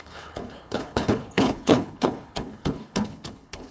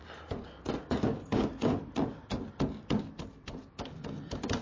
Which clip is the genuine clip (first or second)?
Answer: second